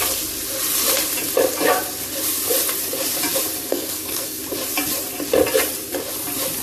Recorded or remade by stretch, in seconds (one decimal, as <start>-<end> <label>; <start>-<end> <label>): 0.0-3.7 recorded; 3.7-4.4 remade; 4.4-6.6 recorded